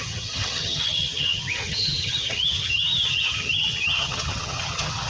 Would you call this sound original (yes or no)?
no